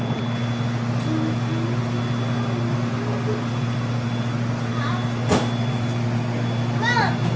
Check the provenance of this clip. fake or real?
real